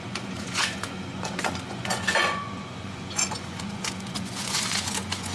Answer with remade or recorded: remade